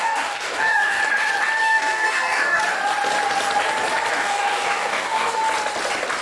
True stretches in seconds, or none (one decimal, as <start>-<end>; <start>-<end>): 1.0-1.6; 2.6-4.1; 5.4-6.2